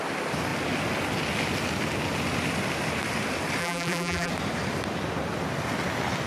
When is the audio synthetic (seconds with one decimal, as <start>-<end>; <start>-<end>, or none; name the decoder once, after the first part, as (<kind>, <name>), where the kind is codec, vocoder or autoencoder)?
3.6-4.3 (vocoder, BigVGAN v2)